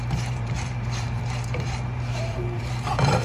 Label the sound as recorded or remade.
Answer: remade